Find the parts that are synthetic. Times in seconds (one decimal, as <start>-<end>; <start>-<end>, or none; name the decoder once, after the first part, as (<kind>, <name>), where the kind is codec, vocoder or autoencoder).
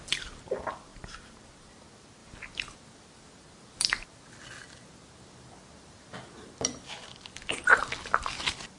0.9-1.7 (vocoder, BigVGAN v2)